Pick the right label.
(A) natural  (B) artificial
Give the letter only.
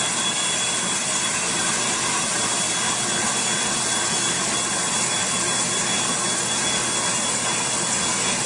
A